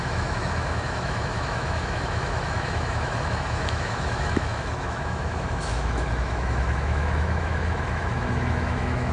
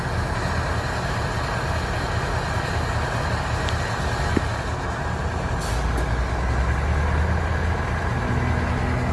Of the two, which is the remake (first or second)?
first